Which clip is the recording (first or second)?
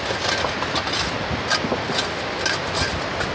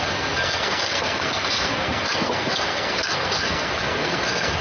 first